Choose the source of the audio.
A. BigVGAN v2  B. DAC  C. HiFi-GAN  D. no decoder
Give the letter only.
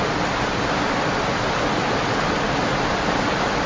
D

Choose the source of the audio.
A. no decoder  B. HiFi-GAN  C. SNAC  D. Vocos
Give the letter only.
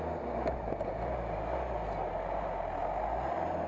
A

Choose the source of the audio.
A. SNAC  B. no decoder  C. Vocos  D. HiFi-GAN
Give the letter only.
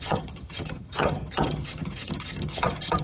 D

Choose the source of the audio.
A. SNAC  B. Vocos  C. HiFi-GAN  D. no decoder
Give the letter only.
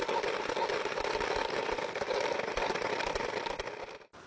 D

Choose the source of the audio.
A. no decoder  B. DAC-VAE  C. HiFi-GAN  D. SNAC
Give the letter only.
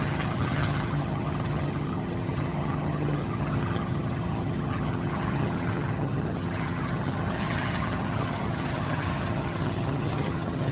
C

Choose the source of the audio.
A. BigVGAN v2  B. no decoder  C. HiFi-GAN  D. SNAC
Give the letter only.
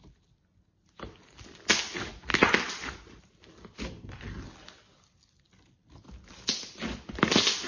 B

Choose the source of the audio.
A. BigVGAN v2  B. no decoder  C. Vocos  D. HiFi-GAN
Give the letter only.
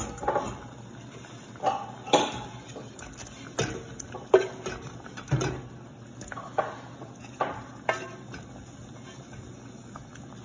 B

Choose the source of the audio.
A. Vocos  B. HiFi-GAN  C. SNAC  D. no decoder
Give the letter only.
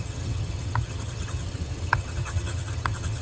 B